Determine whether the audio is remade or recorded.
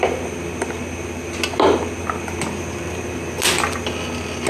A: recorded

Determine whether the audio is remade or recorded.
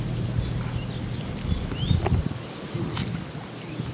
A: recorded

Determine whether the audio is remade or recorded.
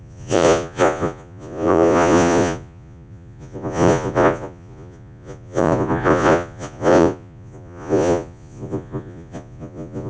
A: remade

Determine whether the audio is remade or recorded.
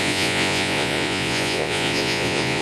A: remade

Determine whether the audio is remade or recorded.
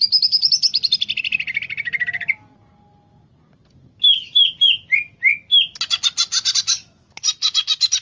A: recorded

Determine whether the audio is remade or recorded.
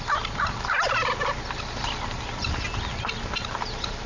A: recorded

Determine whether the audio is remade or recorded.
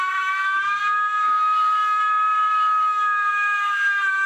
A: remade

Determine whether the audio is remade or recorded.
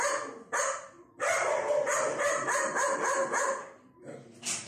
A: recorded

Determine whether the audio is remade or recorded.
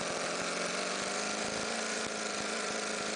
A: recorded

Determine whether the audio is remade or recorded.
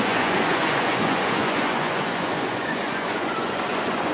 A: remade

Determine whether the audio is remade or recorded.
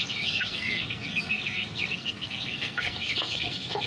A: remade